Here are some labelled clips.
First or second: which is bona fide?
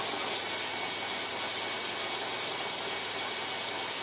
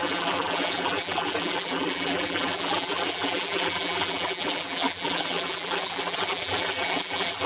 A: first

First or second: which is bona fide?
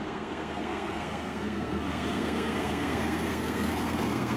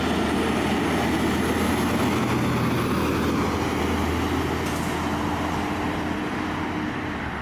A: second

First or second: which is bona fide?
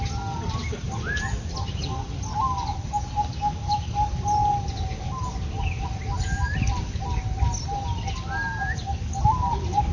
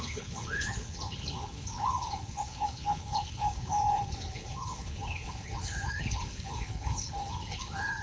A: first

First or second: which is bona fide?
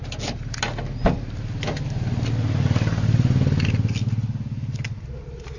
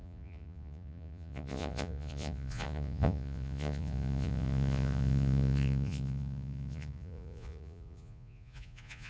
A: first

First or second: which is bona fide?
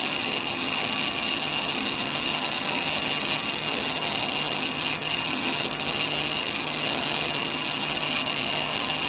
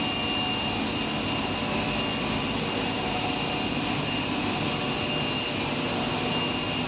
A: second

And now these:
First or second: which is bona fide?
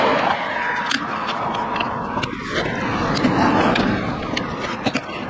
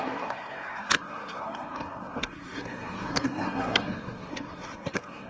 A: first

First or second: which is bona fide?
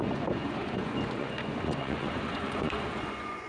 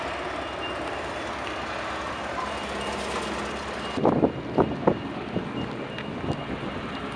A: second